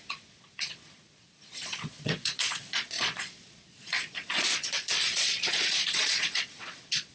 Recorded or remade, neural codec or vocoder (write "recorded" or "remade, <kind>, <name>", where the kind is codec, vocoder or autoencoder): remade, vocoder, Vocos